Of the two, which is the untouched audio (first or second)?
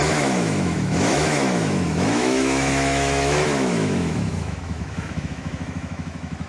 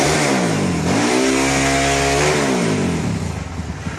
second